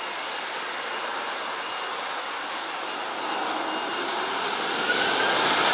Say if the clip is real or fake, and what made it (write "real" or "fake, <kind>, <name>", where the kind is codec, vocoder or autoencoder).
real